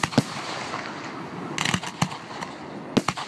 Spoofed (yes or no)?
no